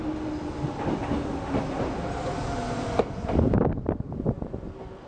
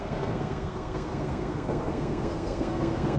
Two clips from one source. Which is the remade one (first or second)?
second